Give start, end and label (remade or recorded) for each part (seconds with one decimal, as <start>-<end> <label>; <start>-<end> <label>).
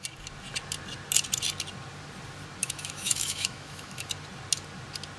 0.0-2.6 recorded; 2.6-4.1 remade; 4.1-5.2 recorded